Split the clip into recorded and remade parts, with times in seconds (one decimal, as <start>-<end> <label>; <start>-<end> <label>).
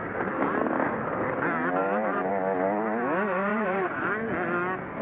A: 0.0-0.9 remade; 0.9-1.8 recorded; 1.8-2.3 remade; 2.3-3.5 recorded; 3.5-4.1 remade; 4.1-5.0 recorded